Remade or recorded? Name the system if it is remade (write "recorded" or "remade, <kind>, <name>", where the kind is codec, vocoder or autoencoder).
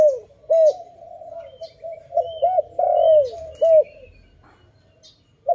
recorded